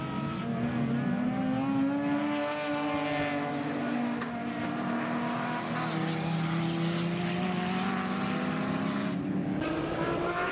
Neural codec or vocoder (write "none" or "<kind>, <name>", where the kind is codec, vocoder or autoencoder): none